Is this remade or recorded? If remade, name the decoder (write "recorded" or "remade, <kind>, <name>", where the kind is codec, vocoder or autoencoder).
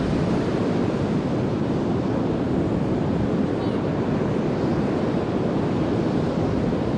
recorded